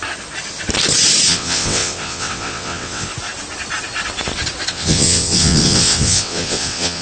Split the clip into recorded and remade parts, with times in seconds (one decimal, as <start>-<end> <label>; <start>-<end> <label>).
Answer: 0.0-1.3 recorded; 1.3-3.1 remade; 3.1-4.7 recorded; 4.7-7.0 remade